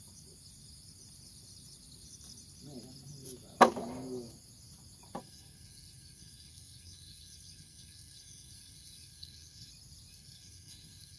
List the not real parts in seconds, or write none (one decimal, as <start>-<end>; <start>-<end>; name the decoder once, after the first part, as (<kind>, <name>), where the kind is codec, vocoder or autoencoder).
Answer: 5.2-9.7 (codec, SNAC); 10.1-11.2